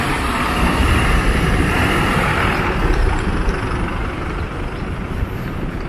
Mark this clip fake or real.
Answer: fake